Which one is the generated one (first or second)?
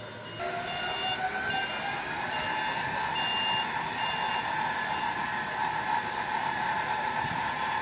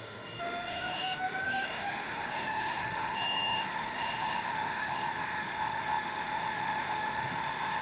second